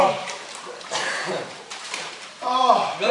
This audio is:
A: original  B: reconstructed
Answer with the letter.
B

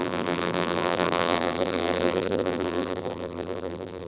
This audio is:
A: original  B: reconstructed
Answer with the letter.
B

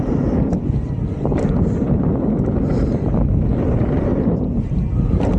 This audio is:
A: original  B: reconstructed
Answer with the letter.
A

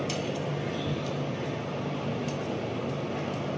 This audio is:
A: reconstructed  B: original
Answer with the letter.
B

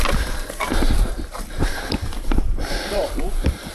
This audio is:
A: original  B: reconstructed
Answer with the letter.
B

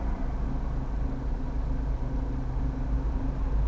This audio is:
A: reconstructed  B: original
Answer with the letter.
B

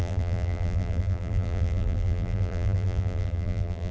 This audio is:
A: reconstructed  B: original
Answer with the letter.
A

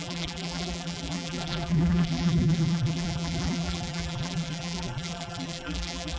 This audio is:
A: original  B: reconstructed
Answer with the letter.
B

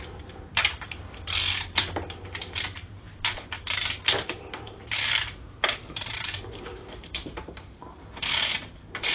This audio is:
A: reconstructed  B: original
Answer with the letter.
A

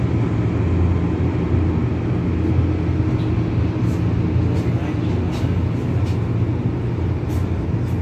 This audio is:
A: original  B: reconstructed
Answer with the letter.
A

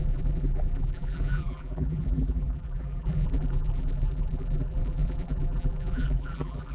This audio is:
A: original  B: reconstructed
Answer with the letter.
B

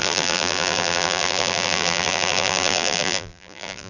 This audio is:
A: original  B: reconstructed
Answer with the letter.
B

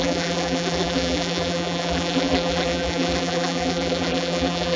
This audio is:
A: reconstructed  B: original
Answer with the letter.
A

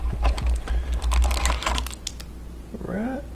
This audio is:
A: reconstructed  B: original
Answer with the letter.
B